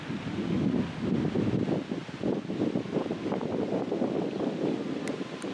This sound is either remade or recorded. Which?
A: recorded